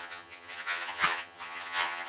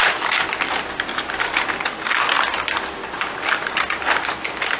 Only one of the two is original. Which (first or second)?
second